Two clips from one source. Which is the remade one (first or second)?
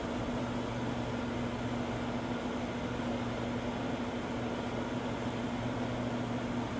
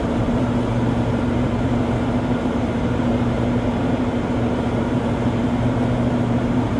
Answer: second